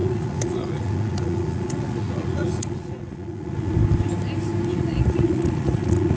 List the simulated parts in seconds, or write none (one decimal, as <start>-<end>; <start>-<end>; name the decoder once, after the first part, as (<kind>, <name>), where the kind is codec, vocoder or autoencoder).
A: 0.0-3.7 (vocoder, Vocos); 4.7-6.2